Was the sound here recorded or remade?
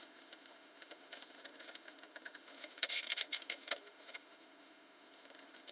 remade